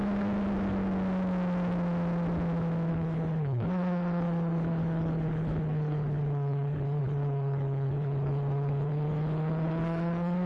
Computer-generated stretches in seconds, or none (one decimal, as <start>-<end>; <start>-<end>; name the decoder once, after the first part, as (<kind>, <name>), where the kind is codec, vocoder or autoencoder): 2.9-10.5 (codec, HILCodec)